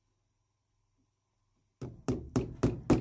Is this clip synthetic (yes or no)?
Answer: no